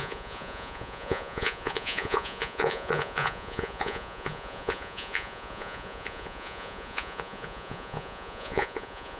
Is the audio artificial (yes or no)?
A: yes